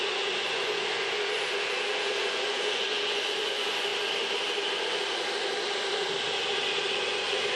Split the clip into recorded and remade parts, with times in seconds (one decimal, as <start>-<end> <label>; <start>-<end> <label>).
0.0-3.9 remade; 3.9-6.9 recorded; 6.9-7.6 remade